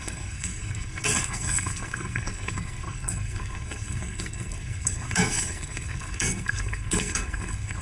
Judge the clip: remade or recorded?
remade